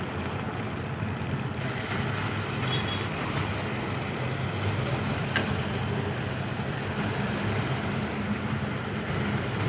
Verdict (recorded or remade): recorded